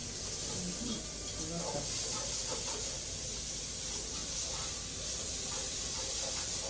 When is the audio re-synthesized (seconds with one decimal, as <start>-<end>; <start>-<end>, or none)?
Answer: 2.4-3.4; 4.2-6.7